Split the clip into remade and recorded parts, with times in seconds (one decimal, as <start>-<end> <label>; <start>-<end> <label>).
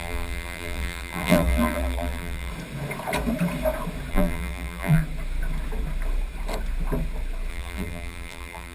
0.0-2.5 remade; 2.5-4.1 recorded; 4.1-5.0 remade; 5.0-7.5 recorded; 7.5-8.7 remade